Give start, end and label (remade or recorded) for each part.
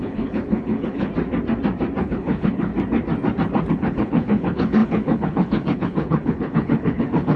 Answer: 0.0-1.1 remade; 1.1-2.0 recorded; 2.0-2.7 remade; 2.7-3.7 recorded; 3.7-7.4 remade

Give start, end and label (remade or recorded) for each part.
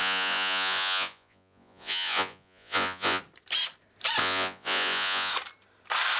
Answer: 0.0-3.2 remade; 3.2-4.2 recorded; 4.2-5.3 remade; 5.3-6.2 recorded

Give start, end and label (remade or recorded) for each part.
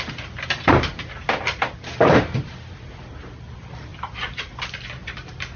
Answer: 0.0-1.2 recorded; 1.2-2.5 remade; 2.5-3.9 recorded; 3.9-5.6 remade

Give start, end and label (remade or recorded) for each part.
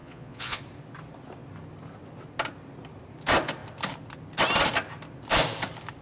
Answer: 0.0-0.6 remade; 0.6-6.0 recorded